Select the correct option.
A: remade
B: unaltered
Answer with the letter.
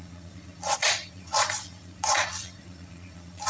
A